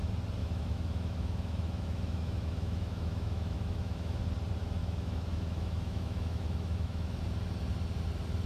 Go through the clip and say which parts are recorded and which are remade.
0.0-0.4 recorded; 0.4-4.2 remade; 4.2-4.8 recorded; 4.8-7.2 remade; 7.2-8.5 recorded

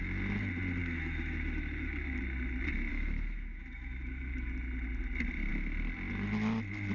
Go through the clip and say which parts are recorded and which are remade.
0.0-0.8 recorded; 0.8-2.2 remade; 2.2-2.9 recorded; 2.9-4.5 remade; 4.5-6.9 recorded

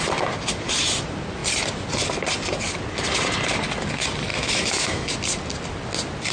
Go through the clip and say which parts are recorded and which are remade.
0.0-4.3 recorded; 4.3-5.1 remade; 5.1-6.3 recorded

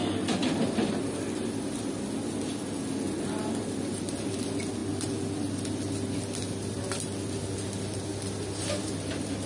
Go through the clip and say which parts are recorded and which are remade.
0.0-9.5 recorded

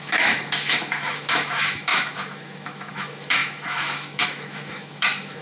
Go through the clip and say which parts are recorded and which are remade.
0.0-5.4 remade